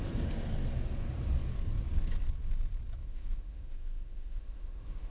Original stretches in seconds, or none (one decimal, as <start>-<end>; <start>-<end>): 0.0-3.0